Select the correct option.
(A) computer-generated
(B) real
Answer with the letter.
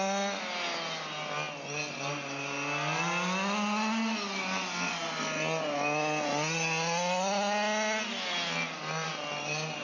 B